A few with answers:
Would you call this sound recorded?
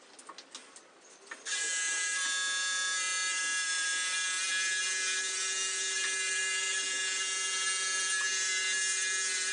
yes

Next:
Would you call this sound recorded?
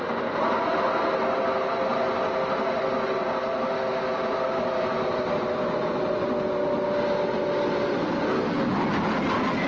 yes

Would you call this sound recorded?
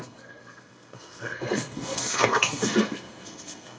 no